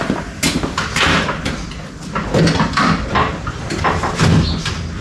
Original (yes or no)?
yes